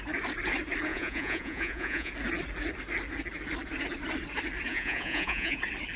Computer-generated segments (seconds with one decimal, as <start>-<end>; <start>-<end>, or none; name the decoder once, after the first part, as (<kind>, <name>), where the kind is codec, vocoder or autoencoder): 0.9-2.1 (vocoder, Vocos); 4.7-5.6